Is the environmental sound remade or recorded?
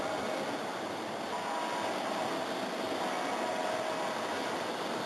recorded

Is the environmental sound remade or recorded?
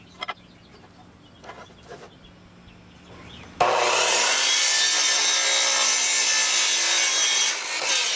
recorded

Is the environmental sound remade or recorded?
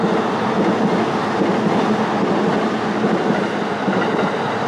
recorded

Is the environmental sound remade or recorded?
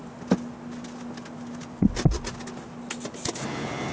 recorded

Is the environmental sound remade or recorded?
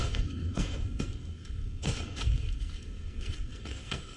remade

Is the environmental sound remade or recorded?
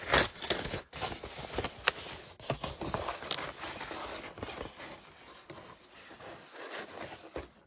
recorded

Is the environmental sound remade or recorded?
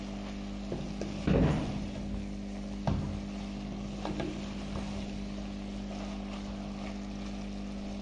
recorded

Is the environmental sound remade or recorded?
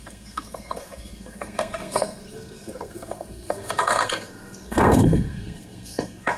remade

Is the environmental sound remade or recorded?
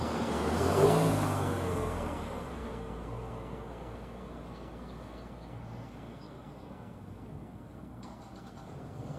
remade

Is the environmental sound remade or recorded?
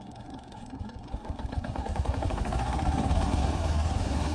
remade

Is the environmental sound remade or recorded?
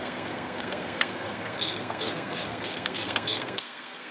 remade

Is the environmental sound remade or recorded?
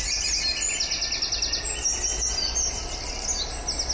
recorded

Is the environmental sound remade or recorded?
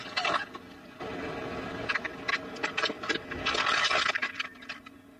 recorded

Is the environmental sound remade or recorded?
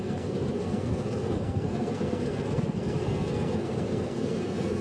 remade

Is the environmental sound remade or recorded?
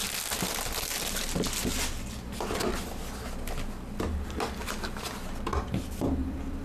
recorded